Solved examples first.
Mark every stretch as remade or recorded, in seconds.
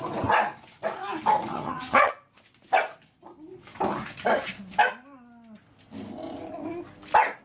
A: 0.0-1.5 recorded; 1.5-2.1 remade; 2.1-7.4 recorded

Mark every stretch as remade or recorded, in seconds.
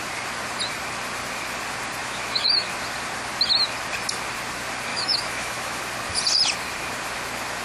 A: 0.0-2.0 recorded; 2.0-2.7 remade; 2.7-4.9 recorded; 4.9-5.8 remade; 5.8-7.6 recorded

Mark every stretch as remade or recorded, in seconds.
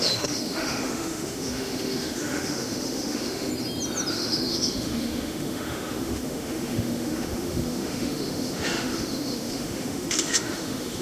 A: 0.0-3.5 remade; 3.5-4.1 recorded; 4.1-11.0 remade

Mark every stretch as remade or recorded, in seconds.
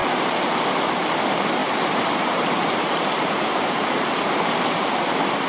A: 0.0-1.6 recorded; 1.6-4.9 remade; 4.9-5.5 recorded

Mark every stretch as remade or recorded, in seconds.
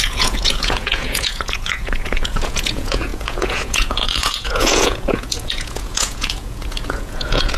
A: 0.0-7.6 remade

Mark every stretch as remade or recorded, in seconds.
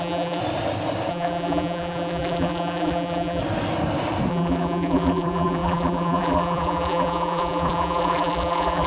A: 0.0-0.4 remade; 0.4-1.1 recorded; 1.1-3.4 remade; 3.4-4.3 recorded; 4.3-8.9 remade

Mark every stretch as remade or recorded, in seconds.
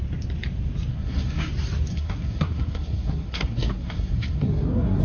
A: 0.0-0.9 recorded; 0.9-1.5 remade; 1.5-1.9 recorded; 1.9-5.0 remade